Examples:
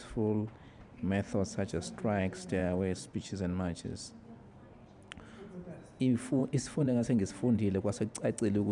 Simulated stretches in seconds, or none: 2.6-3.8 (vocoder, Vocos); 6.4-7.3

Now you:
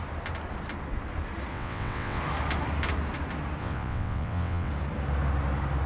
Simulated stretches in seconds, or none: 1.5-2.2 (vocoder, WaveNeXt); 3.6-4.7

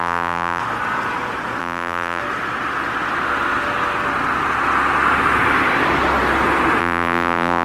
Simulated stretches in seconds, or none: 0.0-0.6 (vocoder, BigVGAN v2); 1.6-2.2; 6.8-7.6

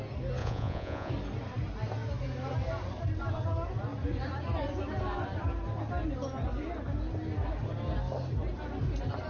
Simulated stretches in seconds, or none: 0.4-1.1 (vocoder, Vocos)